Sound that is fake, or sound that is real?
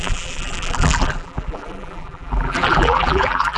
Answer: fake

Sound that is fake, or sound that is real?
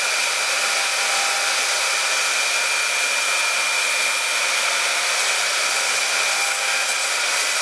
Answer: real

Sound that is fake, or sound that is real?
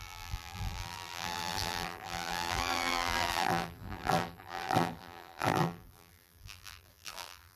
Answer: fake